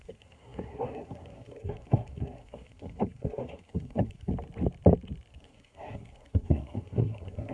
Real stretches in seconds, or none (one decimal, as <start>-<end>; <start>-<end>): 4.3-5.3

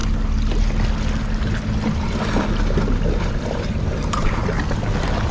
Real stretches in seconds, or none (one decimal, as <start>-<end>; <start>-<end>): 0.0-3.2; 4.4-5.3

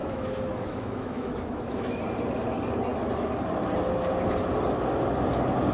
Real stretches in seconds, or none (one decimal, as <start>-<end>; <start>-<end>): 2.0-5.7

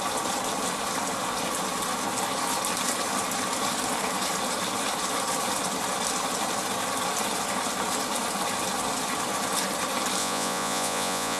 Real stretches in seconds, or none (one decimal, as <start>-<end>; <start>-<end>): 0.0-10.2

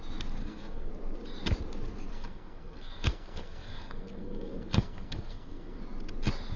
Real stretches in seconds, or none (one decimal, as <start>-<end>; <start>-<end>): 0.0-0.4; 0.9-2.1; 5.8-6.6

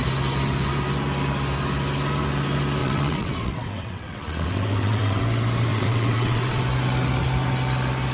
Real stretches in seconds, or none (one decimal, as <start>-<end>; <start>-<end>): 0.0-2.8; 5.2-5.7; 6.6-8.1

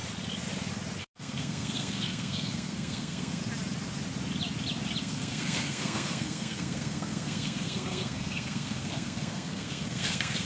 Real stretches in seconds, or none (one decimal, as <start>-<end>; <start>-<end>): 0.0-1.0; 3.4-5.0

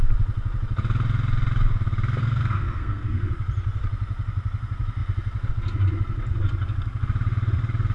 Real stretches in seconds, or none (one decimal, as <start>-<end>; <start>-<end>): 0.0-2.2; 3.3-7.9